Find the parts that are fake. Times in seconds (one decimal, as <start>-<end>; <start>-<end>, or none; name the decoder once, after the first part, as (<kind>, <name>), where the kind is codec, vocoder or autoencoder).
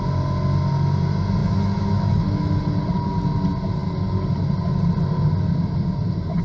1.4-2.5 (autoencoder, DAC-VAE)